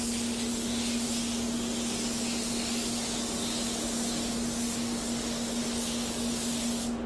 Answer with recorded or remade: recorded